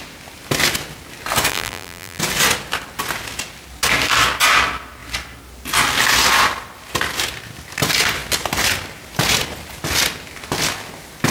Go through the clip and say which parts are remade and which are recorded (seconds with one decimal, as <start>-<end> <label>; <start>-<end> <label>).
0.0-1.5 recorded; 1.5-2.2 remade; 2.2-11.3 recorded